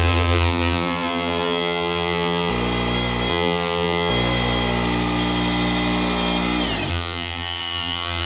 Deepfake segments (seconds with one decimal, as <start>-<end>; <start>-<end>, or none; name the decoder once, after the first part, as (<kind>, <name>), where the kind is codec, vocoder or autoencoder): 0.0-2.5 (vocoder, BigVGAN v2); 3.3-4.1; 6.9-8.2

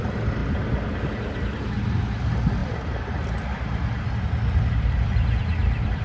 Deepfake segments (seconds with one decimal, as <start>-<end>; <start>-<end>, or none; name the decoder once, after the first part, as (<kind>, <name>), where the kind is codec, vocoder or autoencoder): none